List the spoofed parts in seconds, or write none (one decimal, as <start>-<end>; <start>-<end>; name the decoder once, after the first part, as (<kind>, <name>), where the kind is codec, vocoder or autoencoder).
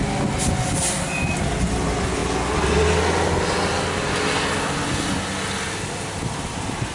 none